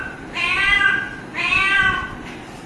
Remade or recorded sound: recorded